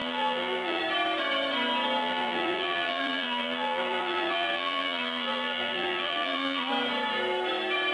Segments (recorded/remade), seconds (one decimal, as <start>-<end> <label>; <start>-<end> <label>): 0.0-0.8 remade; 0.8-2.0 recorded; 2.0-6.7 remade; 6.7-7.9 recorded